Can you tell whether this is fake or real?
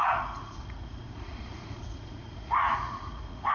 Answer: fake